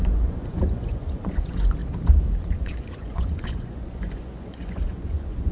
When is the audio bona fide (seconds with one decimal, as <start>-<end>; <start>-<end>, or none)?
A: 1.8-2.4